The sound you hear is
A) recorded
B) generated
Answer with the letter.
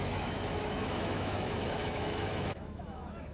B